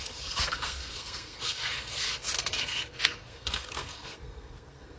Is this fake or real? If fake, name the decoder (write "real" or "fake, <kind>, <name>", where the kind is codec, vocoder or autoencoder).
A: fake, codec, SNAC